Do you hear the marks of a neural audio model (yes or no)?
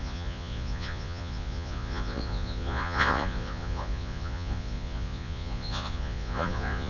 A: yes